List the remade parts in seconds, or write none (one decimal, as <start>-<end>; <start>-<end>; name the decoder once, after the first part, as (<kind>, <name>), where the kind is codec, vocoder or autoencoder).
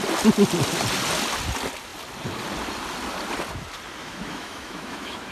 4.0-5.3 (autoencoder, DAC-VAE)